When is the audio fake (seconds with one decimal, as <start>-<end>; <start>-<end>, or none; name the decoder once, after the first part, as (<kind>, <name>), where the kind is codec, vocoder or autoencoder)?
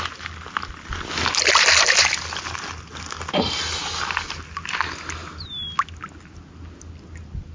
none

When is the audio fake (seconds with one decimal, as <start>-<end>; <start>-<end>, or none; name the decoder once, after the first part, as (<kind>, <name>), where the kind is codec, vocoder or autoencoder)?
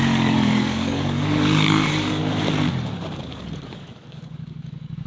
0.0-2.2 (codec, DAC); 3.2-5.1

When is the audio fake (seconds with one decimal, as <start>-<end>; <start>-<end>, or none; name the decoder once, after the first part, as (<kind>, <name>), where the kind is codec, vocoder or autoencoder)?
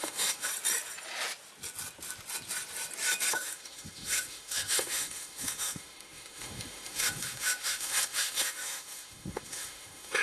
0.0-0.5 (autoencoder, DAC-VAE); 3.3-10.2